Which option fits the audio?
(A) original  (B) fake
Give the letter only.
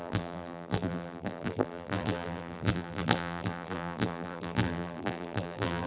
B